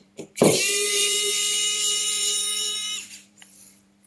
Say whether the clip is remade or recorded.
remade